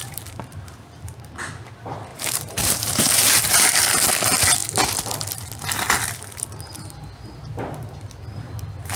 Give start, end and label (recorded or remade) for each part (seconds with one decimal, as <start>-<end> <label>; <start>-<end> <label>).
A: 0.0-1.7 remade; 1.7-2.1 recorded; 2.1-3.8 remade; 3.8-9.0 recorded

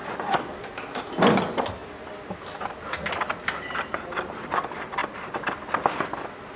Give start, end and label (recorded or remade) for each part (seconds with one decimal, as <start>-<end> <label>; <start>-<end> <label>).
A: 0.0-6.6 recorded

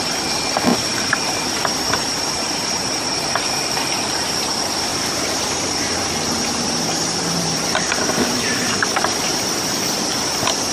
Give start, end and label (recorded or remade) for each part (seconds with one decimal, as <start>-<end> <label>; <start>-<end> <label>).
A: 0.0-0.7 recorded; 0.7-3.3 remade; 3.3-4.9 recorded; 4.9-9.5 remade; 9.5-10.7 recorded

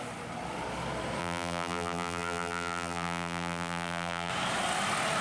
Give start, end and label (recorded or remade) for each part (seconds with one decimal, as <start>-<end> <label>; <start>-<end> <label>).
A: 0.0-1.2 recorded; 1.2-4.3 remade; 4.3-5.2 recorded

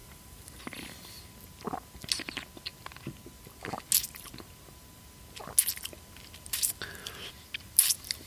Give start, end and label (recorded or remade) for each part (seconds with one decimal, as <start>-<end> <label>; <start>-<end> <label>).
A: 0.0-0.6 remade; 0.6-8.3 recorded